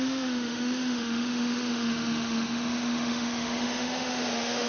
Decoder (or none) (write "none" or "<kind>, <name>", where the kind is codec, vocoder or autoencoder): autoencoder, DAC-VAE